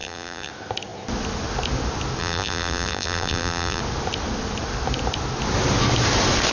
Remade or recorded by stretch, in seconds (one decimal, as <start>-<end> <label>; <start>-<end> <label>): 0.0-0.5 remade; 0.5-2.2 recorded; 2.2-3.8 remade; 3.8-6.5 recorded